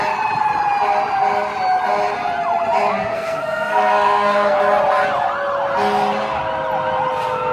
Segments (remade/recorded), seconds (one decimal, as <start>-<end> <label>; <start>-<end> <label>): 0.0-3.1 recorded; 3.1-4.6 remade; 4.6-7.5 recorded

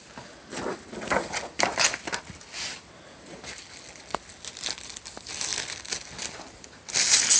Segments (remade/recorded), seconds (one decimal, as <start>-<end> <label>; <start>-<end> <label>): 0.0-7.4 recorded